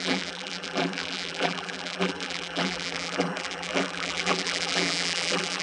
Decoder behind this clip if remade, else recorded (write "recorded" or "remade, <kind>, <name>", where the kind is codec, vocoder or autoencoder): remade, vocoder, BigVGAN v2